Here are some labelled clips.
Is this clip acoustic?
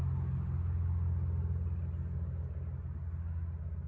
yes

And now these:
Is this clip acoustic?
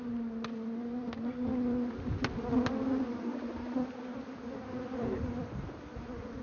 yes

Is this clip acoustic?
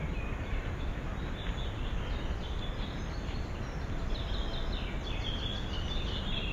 yes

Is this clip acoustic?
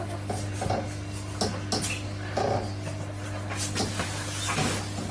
yes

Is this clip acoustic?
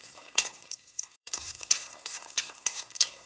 no